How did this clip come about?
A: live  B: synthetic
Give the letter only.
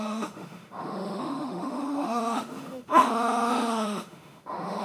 B